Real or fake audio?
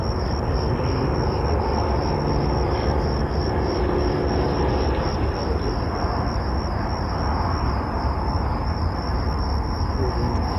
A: real